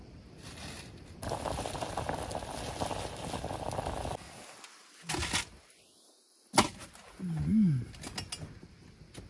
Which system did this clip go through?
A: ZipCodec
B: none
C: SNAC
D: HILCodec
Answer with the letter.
B